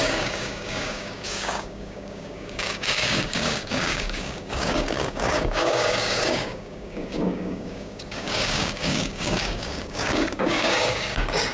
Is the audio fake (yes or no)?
yes